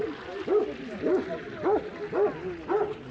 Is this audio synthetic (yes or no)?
no